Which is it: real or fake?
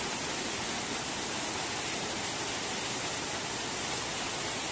real